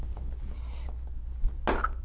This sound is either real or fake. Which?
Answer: real